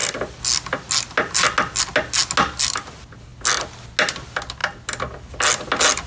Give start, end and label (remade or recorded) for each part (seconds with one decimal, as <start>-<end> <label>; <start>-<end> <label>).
0.0-6.1 recorded